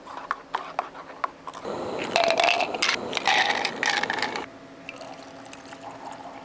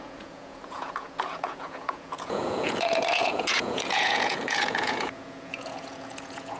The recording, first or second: first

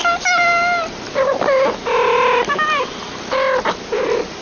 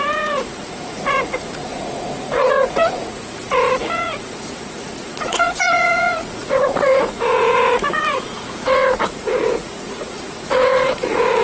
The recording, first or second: first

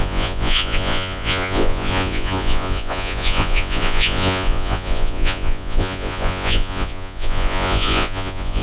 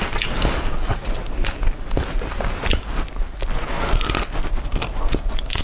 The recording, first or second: second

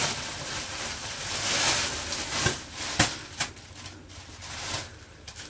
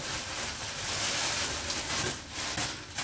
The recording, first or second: second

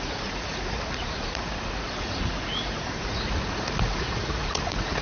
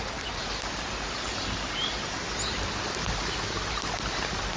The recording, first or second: second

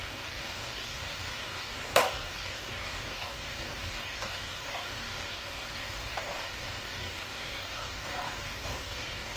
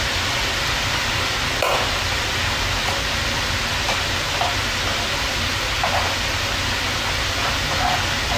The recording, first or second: second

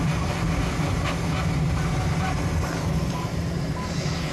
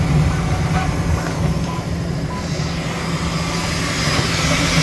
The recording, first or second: second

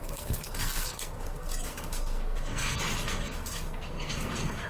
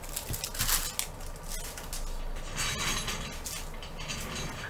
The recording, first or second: second